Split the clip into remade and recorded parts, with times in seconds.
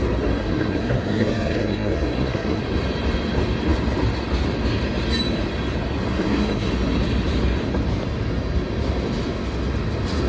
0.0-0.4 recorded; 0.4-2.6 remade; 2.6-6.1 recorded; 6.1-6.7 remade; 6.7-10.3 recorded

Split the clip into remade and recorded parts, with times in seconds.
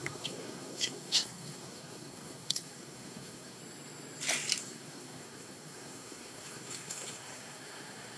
0.0-3.6 remade; 3.6-4.6 recorded; 4.6-8.2 remade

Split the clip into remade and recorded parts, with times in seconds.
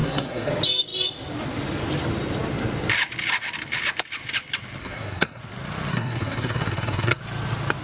0.0-0.5 remade; 0.5-4.8 recorded; 4.8-5.4 remade; 5.4-5.9 recorded; 5.9-7.2 remade; 7.2-7.8 recorded